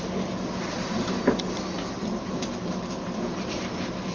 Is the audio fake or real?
real